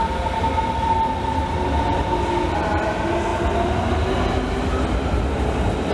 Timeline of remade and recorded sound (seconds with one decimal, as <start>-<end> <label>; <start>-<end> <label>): 0.0-5.9 recorded